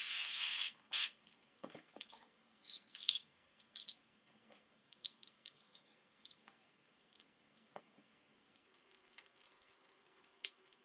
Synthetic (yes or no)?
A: yes